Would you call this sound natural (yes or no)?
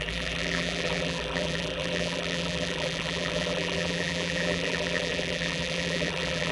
no